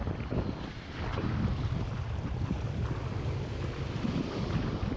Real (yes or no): yes